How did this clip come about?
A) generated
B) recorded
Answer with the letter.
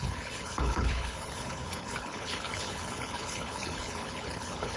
A